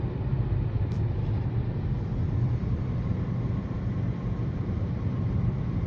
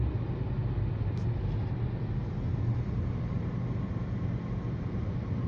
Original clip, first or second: second